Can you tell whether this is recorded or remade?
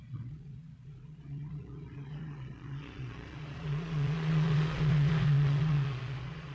remade